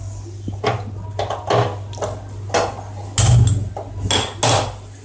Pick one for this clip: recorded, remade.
recorded